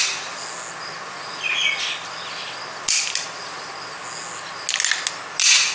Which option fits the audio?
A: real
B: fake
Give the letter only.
A